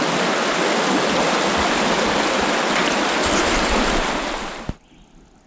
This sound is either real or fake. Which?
real